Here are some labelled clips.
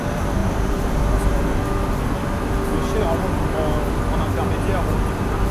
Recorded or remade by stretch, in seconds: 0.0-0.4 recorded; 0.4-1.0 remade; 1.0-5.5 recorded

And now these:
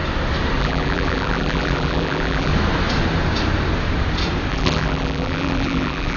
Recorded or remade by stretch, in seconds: 0.0-0.6 recorded; 0.6-2.5 remade; 2.5-4.5 recorded; 4.5-6.2 remade

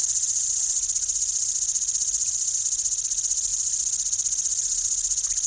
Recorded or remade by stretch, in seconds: 0.0-5.5 recorded